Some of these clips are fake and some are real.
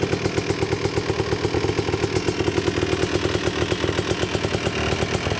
real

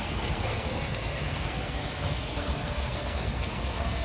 fake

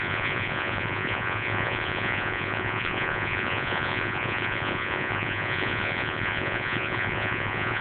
fake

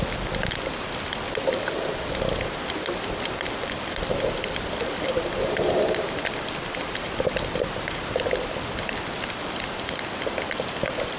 fake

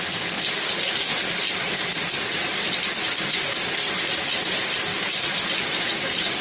real